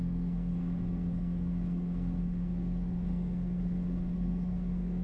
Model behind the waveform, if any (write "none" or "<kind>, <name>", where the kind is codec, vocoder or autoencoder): codec, SNAC